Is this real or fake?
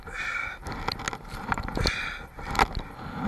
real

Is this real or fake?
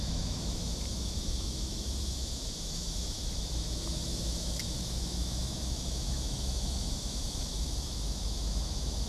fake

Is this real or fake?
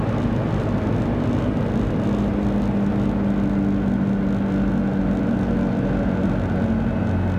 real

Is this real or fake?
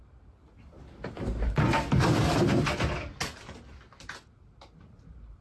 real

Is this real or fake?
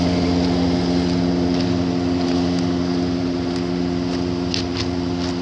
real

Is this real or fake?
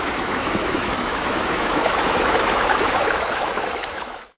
fake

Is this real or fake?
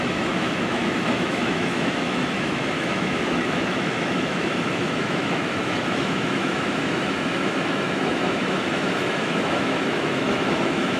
fake